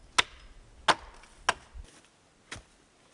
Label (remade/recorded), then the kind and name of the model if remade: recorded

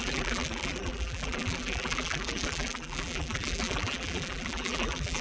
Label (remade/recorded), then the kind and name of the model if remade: remade, vocoder, BigVGAN v2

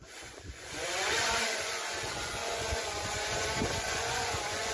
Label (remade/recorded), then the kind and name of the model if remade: remade, vocoder, Vocos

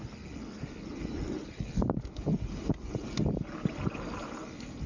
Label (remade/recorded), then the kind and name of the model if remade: recorded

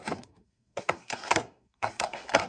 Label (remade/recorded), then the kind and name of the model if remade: remade, codec, SNAC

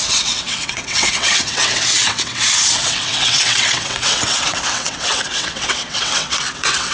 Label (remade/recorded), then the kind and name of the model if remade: remade, vocoder, WaveNeXt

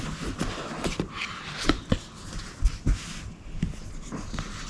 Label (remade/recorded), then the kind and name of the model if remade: recorded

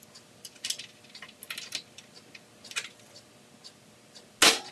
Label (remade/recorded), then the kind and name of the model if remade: recorded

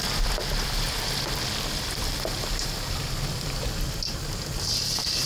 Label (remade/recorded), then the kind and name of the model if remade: remade, vocoder, BigVGAN v2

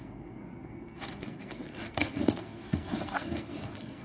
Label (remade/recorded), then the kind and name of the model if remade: remade, codec, SNAC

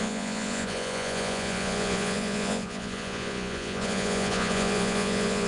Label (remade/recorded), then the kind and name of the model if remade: remade, vocoder, Vocos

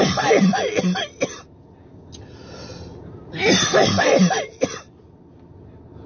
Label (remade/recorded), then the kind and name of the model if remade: recorded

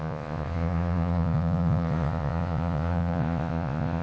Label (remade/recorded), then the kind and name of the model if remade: remade, vocoder, Vocos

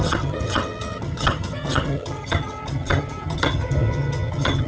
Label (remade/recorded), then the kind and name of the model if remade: remade, vocoder, HiFi-GAN